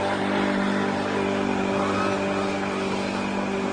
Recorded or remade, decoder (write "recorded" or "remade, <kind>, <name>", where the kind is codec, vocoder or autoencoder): recorded